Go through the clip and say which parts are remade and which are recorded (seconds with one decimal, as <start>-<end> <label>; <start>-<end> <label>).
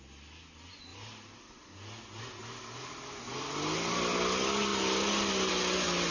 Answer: 0.0-6.1 recorded